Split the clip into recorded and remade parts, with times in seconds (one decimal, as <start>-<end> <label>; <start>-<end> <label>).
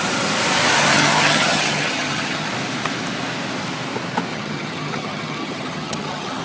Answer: 0.0-0.9 recorded; 0.9-2.5 remade; 2.5-4.3 recorded; 4.3-6.4 remade